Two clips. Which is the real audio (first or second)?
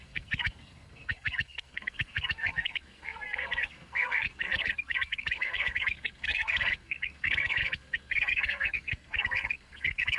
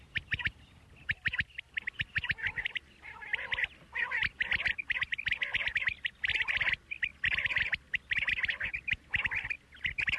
second